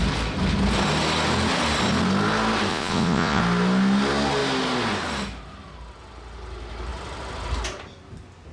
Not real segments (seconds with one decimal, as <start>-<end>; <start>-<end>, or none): 2.7-3.4